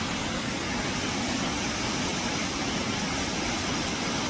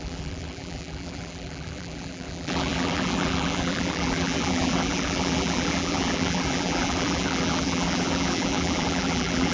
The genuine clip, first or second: first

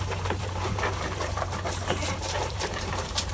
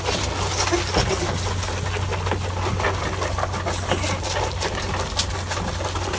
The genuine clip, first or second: second